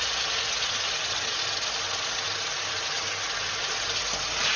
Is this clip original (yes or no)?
yes